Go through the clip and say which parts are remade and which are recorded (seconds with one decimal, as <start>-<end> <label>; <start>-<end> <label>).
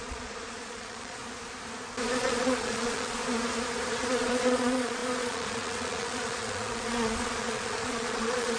0.0-1.2 remade; 1.2-2.2 recorded; 2.2-3.2 remade; 3.2-3.9 recorded; 3.9-8.6 remade